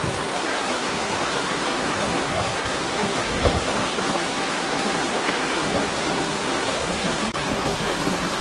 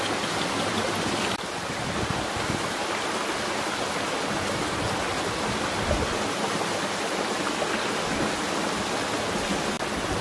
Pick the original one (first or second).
second